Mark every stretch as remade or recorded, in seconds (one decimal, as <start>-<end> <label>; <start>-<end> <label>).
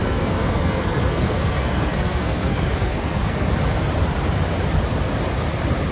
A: 0.0-3.5 remade; 3.5-5.9 recorded